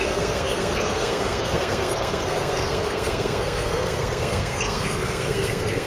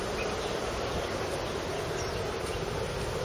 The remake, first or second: first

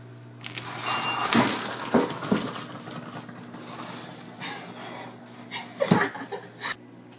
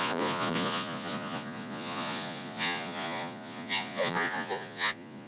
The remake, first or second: second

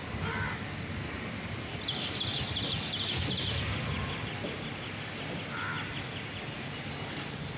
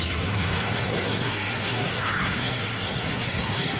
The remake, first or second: second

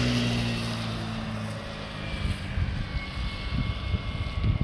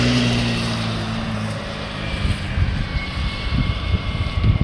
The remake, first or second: second